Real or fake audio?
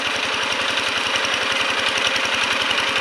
real